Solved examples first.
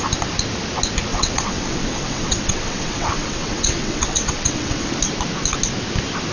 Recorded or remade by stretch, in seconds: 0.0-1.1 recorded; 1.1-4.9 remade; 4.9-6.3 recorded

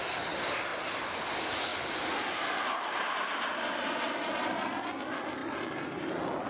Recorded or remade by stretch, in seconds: 0.0-6.5 recorded

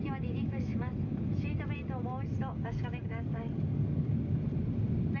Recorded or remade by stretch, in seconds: 0.0-3.1 recorded; 3.1-4.1 remade; 4.1-5.2 recorded

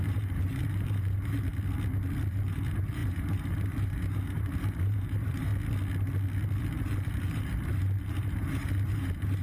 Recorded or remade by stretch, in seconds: 0.0-1.5 remade; 1.5-2.3 recorded; 2.3-5.5 remade; 5.5-6.6 recorded; 6.6-9.4 remade

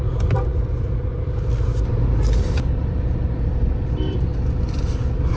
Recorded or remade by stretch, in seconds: 0.0-5.4 remade

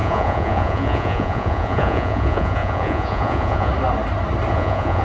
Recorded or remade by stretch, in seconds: 0.0-3.7 remade; 3.7-4.5 recorded; 4.5-5.0 remade

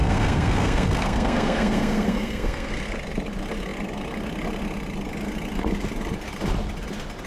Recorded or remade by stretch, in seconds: 0.0-2.7 remade; 2.7-7.3 recorded

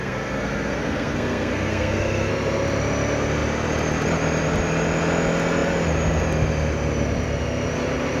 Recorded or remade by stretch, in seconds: 0.0-2.3 remade; 2.3-8.2 recorded